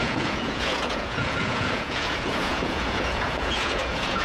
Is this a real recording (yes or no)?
no